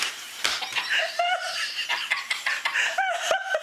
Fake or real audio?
fake